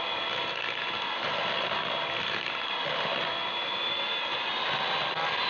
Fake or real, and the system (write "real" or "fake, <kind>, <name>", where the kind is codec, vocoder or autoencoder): real